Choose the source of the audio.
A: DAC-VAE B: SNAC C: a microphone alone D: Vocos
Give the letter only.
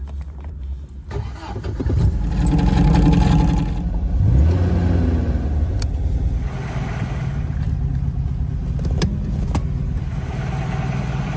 C